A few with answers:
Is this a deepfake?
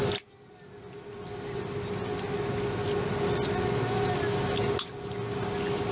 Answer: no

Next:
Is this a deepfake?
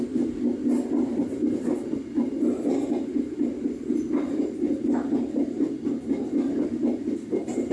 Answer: no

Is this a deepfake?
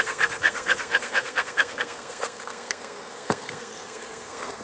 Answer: yes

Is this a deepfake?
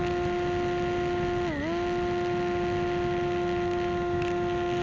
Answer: no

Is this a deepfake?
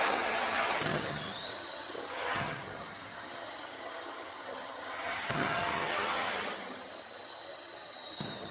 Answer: yes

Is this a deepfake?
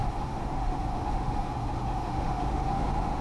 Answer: yes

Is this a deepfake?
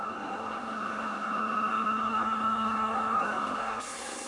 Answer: yes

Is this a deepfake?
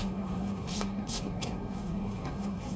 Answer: yes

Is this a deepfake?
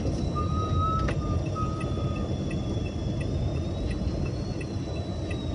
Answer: no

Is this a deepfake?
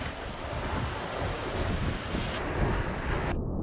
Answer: no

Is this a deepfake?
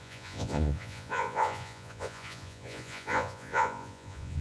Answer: yes